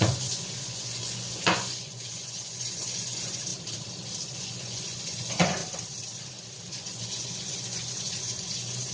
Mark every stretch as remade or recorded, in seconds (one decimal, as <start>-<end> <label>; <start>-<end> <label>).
0.0-3.5 remade; 3.5-4.4 recorded; 4.4-5.6 remade; 5.6-6.7 recorded; 6.7-8.9 remade